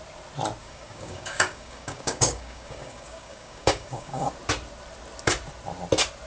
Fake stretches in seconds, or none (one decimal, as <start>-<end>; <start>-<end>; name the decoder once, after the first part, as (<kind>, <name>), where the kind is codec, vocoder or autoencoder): 0.6-4.3 (codec, DAC)